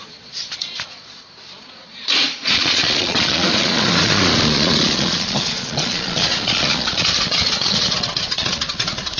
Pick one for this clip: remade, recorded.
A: remade